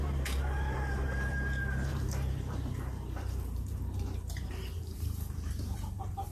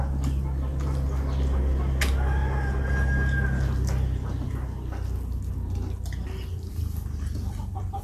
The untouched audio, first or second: second